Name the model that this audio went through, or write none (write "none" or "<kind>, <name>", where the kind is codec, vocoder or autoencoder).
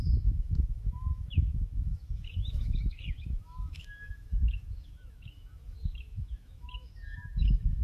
autoencoder, DAC-VAE